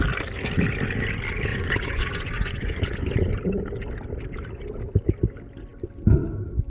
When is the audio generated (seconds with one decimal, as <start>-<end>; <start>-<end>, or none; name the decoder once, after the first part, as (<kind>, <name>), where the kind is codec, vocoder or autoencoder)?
1.5-3.3 (vocoder, Vocos)